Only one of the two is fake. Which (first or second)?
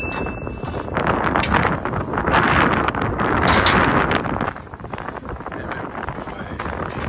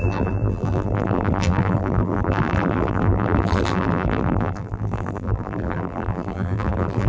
second